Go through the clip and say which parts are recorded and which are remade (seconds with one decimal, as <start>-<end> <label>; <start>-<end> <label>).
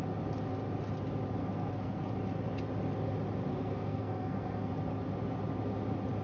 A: 0.0-1.4 recorded; 1.4-2.1 remade; 2.1-3.5 recorded; 3.5-4.7 remade; 4.7-6.2 recorded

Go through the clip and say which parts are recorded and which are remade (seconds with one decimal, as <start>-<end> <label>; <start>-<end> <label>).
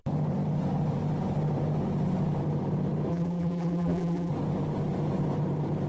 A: 0.0-3.1 recorded; 3.1-4.3 remade; 4.3-5.9 recorded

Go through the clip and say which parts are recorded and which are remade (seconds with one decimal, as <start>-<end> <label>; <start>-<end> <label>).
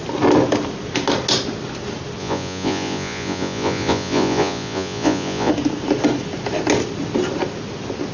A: 0.0-2.2 recorded; 2.2-5.5 remade; 5.5-8.1 recorded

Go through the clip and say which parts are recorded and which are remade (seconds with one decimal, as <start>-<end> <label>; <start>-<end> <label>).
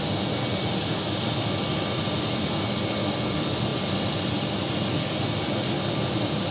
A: 0.0-6.5 recorded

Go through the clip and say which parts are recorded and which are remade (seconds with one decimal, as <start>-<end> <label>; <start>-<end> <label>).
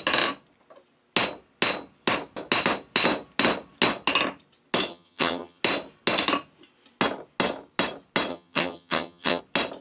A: 0.0-4.9 recorded; 4.9-5.6 remade; 5.6-8.3 recorded; 8.3-9.4 remade; 9.4-9.8 recorded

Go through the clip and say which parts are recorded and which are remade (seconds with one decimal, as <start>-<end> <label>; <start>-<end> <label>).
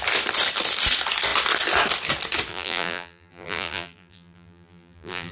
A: 0.0-2.5 recorded; 2.5-5.3 remade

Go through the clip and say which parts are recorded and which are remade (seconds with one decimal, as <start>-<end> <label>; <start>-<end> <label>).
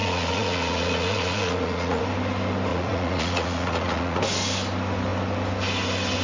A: 0.0-2.0 remade; 2.0-2.7 recorded; 2.7-4.2 remade; 4.2-6.2 recorded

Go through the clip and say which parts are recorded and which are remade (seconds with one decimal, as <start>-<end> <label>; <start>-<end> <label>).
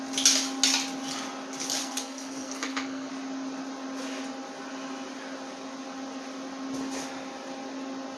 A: 0.0-1.8 recorded; 1.8-3.1 remade; 3.1-8.2 recorded